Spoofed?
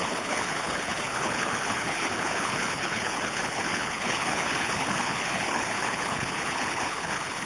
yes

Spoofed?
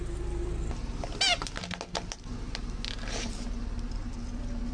no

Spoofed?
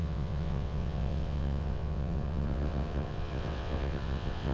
yes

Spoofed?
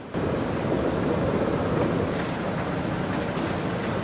no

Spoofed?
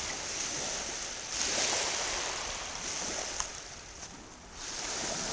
no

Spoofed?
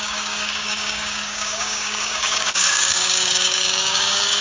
yes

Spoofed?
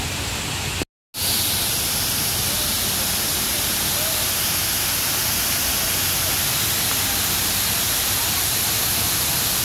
no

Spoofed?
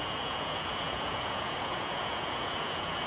yes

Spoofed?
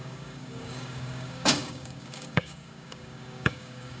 yes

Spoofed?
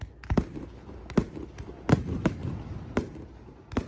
no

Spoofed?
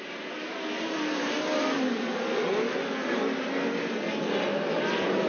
no